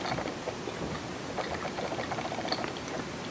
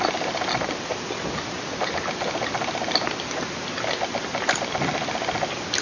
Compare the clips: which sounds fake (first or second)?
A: first